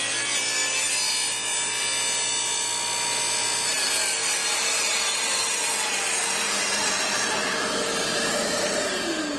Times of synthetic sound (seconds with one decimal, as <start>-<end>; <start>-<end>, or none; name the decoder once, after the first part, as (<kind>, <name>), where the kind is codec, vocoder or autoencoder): none